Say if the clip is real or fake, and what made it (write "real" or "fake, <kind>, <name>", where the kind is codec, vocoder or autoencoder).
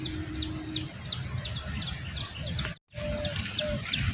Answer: real